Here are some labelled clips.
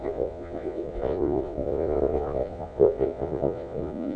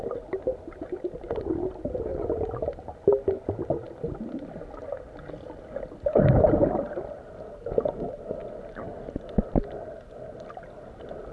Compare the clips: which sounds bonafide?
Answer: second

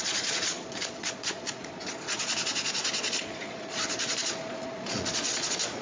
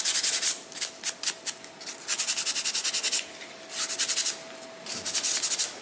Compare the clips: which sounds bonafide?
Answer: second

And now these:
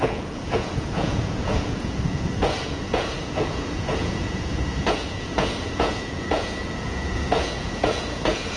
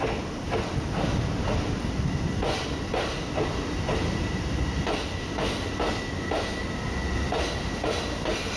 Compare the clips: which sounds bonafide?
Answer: second